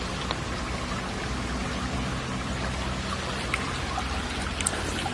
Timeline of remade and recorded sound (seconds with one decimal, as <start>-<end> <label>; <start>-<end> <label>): 0.0-5.1 recorded